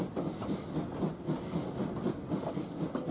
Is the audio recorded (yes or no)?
yes